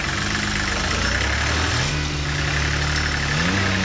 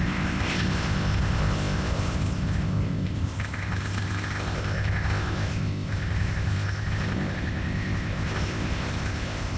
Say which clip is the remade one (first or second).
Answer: second